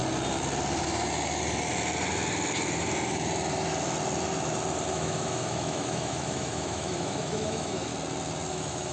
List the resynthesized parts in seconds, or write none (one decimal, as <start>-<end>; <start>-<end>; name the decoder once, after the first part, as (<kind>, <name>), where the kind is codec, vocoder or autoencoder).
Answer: 4.9-7.9 (autoencoder, DAC-VAE); 8.5-8.9